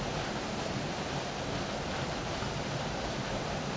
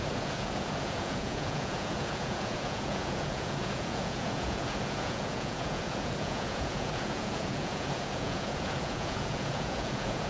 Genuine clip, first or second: first